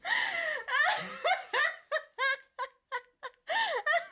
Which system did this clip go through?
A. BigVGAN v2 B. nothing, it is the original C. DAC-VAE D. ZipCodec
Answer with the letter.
B